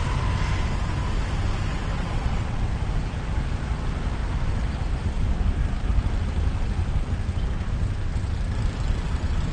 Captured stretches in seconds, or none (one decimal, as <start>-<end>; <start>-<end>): 0.0-1.9; 2.7-9.5